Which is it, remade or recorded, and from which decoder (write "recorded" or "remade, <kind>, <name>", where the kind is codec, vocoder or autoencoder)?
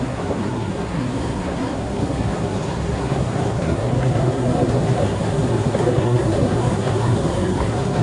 remade, codec, SNAC